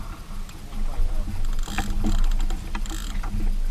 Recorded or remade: recorded